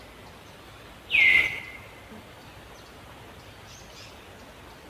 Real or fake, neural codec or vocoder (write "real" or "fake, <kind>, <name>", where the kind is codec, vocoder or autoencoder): real